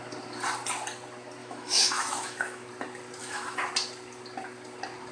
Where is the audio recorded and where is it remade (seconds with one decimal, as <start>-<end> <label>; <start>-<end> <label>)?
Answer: 0.0-1.4 recorded; 1.4-2.7 remade; 2.7-3.2 recorded; 3.2-3.7 remade; 3.7-5.1 recorded